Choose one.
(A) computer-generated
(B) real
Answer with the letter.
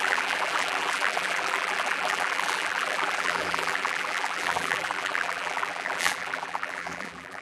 A